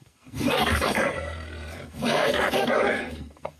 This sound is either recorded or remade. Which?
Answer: remade